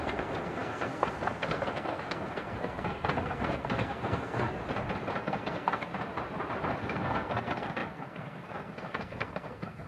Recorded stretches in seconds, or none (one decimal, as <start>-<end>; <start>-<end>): 4.6-5.2; 5.9-6.8

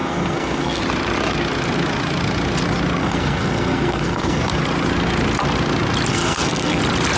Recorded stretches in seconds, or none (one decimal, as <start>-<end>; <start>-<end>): 0.8-3.0; 4.4-6.1; 6.8-7.2

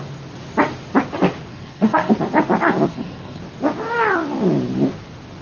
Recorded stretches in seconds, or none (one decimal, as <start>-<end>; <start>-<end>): 0.0-1.5; 2.1-2.9; 3.4-5.4

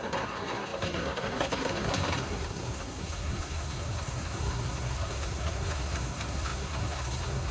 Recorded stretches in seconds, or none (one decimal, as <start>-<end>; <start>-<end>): none

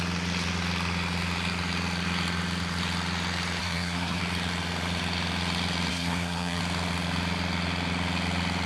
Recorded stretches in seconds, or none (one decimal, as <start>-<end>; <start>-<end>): 0.0-3.6; 4.2-5.9; 6.6-8.7